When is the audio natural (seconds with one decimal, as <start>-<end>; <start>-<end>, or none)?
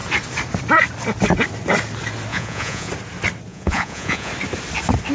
0.0-2.3; 2.9-3.5; 4.3-5.1